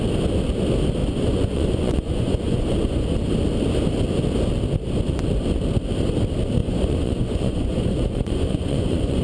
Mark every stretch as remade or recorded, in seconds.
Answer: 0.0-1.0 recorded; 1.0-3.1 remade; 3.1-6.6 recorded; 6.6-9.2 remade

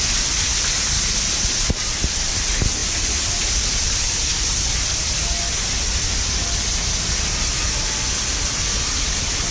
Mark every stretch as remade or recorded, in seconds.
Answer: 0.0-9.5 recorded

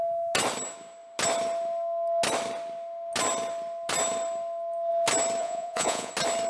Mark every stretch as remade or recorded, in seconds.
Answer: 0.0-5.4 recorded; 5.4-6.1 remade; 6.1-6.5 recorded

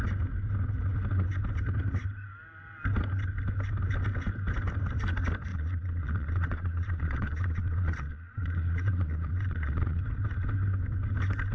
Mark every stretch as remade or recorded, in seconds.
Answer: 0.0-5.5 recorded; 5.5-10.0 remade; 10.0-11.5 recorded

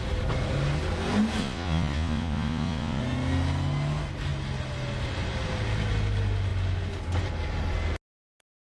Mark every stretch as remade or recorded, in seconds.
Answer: 0.0-1.4 recorded; 1.4-3.0 remade; 3.0-8.7 recorded

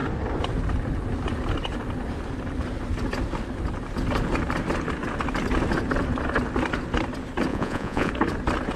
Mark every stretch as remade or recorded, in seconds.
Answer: 0.0-7.5 recorded; 7.5-8.1 remade; 8.1-8.8 recorded

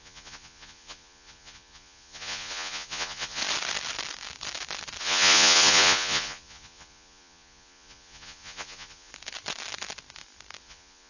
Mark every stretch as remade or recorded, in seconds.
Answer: 0.0-3.4 remade; 3.4-5.0 recorded; 5.0-9.1 remade; 9.1-10.6 recorded; 10.6-11.1 remade

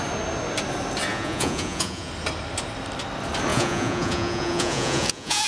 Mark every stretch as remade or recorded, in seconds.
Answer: 0.0-1.1 recorded; 1.1-2.1 remade; 2.1-3.5 recorded; 3.5-5.5 remade